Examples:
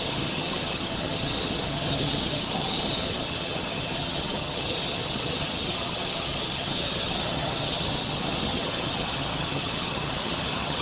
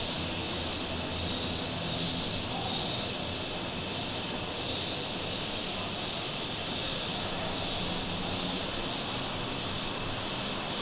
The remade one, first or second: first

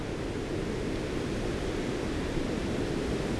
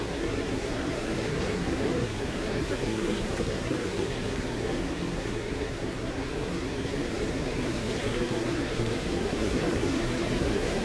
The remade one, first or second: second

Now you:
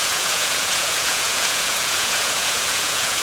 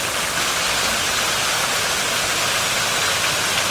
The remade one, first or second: first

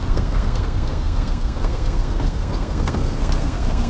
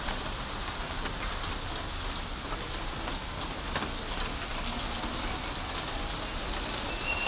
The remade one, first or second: first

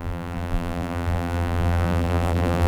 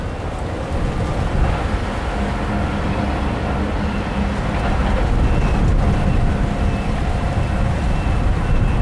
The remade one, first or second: first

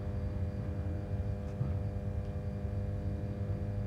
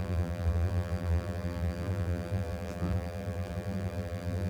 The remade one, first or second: second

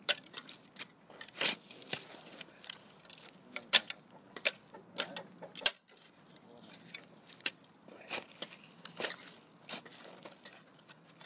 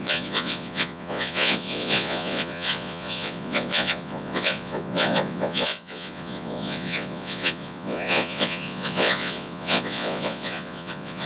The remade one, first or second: second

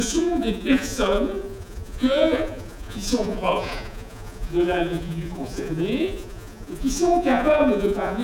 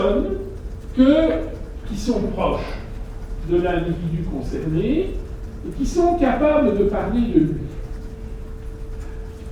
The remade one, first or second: first